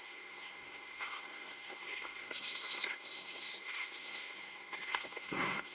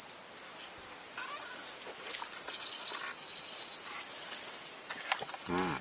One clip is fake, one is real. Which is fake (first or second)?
first